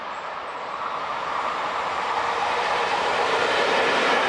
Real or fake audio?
fake